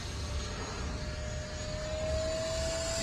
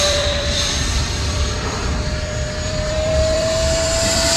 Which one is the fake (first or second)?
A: second